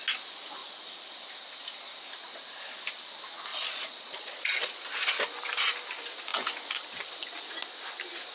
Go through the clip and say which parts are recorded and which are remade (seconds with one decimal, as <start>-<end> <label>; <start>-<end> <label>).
0.0-3.5 recorded; 3.5-5.2 remade; 5.2-8.3 recorded